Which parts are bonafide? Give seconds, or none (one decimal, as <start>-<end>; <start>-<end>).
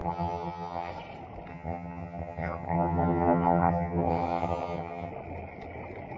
0.9-1.5; 5.1-6.2